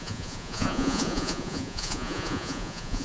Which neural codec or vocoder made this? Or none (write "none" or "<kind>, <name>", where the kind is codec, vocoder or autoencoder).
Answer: vocoder, Vocos